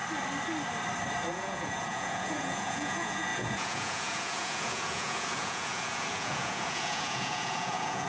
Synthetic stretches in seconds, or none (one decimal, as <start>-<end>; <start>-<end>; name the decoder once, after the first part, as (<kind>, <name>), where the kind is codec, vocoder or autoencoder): 1.3-8.1 (vocoder, Vocos)